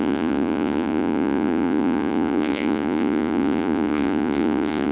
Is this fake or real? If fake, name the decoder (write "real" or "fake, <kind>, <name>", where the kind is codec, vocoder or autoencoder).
fake, vocoder, Vocos